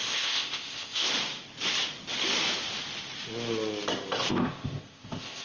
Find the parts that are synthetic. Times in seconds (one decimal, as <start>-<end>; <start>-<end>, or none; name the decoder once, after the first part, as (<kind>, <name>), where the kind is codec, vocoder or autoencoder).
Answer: 0.0-1.1 (codec, ZipCodec); 4.3-5.4